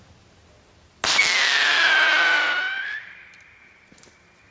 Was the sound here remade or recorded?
recorded